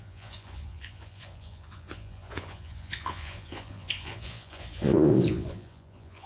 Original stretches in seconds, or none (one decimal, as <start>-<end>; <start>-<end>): none